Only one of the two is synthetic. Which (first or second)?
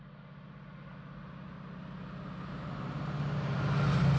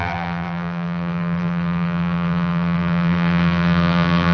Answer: second